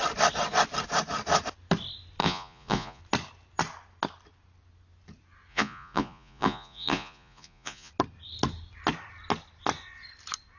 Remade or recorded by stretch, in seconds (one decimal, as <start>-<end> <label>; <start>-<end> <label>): 0.0-2.2 recorded; 2.2-3.0 remade; 3.0-5.5 recorded; 5.5-7.9 remade; 7.9-10.6 recorded